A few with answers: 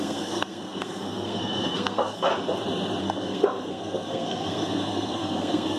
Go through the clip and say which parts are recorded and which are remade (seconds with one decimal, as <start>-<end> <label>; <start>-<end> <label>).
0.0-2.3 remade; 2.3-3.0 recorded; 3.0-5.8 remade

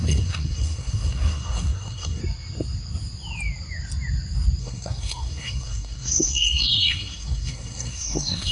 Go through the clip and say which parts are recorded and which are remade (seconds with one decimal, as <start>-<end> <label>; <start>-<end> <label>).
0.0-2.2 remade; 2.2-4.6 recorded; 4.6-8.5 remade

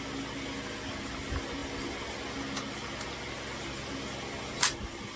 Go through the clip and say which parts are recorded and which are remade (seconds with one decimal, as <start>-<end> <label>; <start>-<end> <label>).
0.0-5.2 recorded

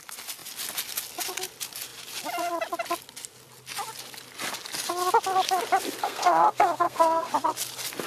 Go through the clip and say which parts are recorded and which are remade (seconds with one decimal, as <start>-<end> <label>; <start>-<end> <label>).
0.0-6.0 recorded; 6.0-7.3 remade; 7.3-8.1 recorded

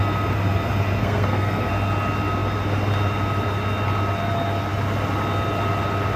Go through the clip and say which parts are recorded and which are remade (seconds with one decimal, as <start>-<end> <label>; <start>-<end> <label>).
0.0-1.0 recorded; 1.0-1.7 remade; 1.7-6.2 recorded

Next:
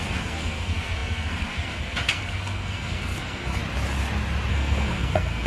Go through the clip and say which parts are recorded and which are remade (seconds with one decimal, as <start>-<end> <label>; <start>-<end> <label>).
0.0-3.6 remade; 3.6-4.5 recorded; 4.5-5.5 remade

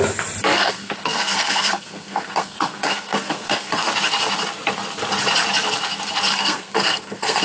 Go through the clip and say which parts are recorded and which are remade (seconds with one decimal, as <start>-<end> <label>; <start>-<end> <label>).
0.0-0.5 recorded; 0.5-3.7 remade; 3.7-6.3 recorded; 6.3-7.4 remade